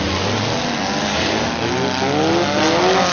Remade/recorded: recorded